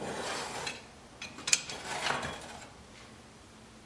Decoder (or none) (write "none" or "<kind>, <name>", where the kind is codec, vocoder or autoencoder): vocoder, BigVGAN v2